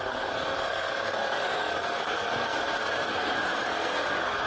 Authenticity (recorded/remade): remade